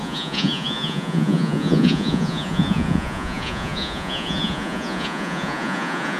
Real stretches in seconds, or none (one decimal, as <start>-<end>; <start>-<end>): none